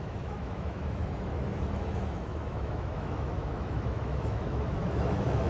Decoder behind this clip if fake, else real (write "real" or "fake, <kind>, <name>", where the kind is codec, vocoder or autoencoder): fake, autoencoder, DAC-VAE